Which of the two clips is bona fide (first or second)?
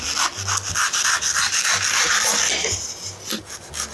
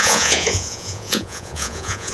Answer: first